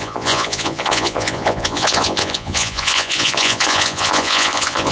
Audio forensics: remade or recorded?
remade